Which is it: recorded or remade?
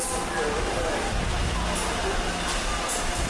recorded